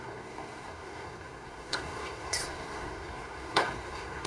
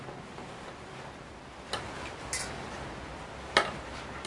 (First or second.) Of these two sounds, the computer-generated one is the first